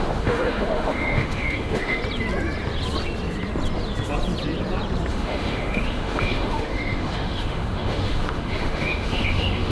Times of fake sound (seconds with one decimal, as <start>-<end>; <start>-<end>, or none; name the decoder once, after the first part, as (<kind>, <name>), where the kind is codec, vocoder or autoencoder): 0.0-2.0 (autoencoder, DAC-VAE); 5.1-9.7